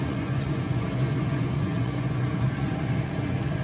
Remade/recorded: remade